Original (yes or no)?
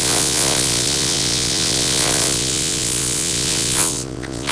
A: no